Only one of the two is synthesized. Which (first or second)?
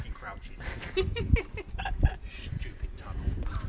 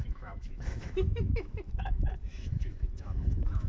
second